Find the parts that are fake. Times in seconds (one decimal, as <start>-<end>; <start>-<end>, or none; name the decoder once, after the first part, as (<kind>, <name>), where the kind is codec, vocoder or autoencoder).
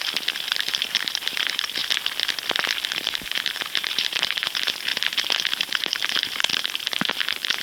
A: 0.0-1.8 (vocoder, BigVGAN v2); 2.8-4.9; 5.5-7.6